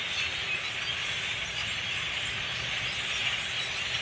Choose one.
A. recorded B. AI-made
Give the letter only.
A